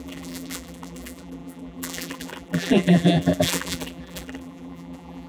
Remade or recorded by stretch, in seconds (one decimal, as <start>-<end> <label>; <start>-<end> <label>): 0.0-5.3 remade